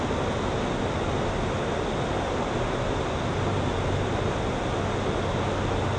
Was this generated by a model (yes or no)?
no